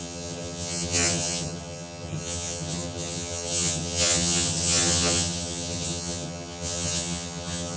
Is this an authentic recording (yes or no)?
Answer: no